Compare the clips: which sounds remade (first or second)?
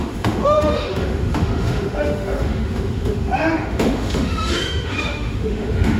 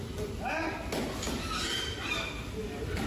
first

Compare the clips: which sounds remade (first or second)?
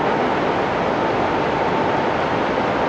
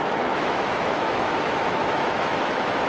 second